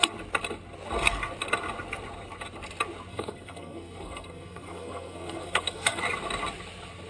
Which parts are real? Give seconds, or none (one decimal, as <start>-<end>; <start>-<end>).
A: 0.0-3.1; 6.0-7.1